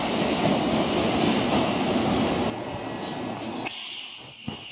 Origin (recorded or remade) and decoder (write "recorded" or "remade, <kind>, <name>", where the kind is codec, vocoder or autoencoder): recorded